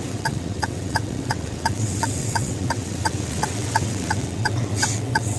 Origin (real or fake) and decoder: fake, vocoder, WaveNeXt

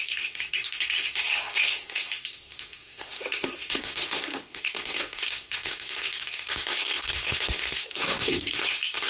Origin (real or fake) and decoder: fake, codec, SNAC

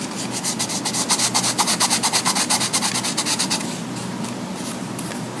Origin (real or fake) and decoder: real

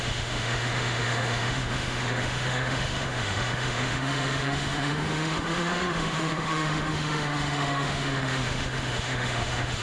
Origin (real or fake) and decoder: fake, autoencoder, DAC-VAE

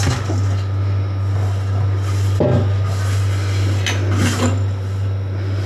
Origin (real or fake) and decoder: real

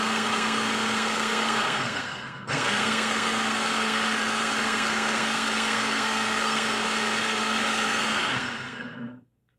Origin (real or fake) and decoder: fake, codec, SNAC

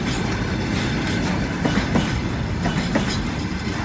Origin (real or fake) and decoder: real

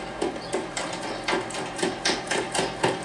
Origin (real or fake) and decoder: real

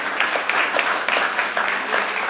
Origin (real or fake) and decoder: real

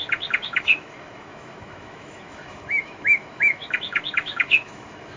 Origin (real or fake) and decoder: fake, autoencoder, DAC-VAE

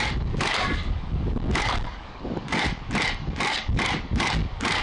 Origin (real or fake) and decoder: fake, codec, DAC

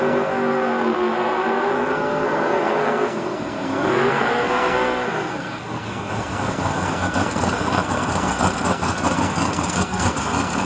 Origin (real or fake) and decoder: fake, codec, SNAC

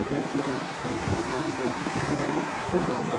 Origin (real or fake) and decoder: fake, codec, SNAC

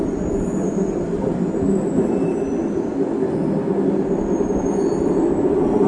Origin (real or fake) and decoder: real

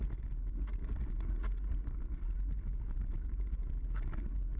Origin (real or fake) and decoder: real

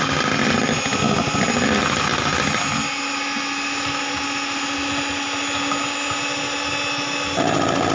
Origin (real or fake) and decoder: real